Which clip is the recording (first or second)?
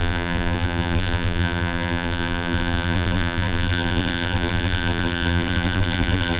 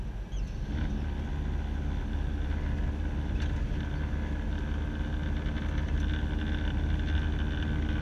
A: second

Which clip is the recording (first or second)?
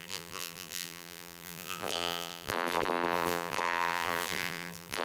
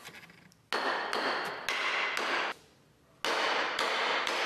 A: second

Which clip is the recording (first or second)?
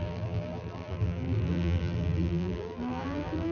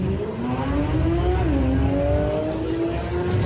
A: second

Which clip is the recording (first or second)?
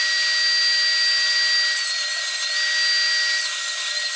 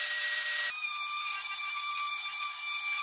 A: first